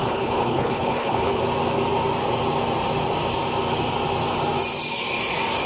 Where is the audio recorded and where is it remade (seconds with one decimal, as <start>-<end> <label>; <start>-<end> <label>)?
0.0-1.4 remade; 1.4-5.7 recorded